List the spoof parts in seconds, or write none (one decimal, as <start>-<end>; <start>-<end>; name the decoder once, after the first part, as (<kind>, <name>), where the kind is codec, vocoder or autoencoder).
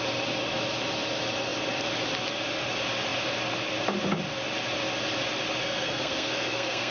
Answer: 5.6-6.9 (codec, SNAC)